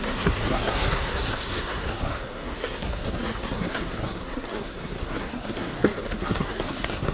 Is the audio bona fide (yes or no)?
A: no